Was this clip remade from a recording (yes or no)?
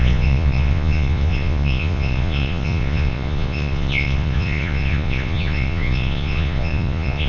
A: yes